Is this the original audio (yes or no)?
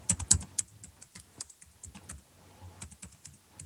yes